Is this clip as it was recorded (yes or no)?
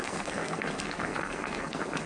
no